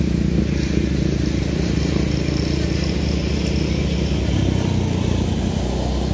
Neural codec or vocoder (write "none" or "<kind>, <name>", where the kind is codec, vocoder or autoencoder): none